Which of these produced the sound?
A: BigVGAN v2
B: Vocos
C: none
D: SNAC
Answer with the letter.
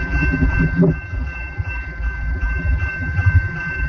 A